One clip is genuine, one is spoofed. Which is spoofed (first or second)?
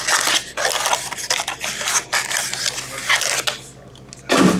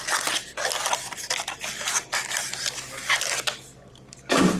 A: second